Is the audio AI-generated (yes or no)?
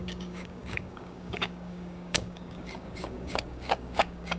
yes